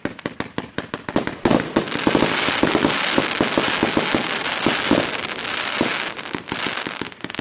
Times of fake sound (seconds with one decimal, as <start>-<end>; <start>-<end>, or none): none